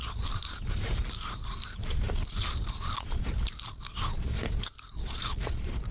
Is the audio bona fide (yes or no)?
no